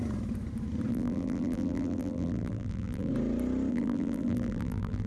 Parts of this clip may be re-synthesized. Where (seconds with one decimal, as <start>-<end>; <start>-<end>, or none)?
0.9-3.1; 3.7-5.1